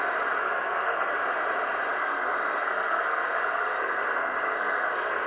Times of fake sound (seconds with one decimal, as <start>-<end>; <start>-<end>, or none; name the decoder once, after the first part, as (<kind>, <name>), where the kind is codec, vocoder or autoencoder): 0.4-1.1 (codec, SNAC); 2.0-5.3